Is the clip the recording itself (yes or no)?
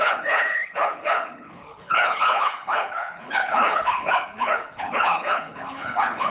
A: no